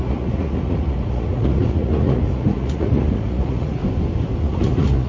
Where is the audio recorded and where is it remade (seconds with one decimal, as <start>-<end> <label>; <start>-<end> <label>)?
0.0-3.8 remade; 3.8-4.4 recorded; 4.4-5.1 remade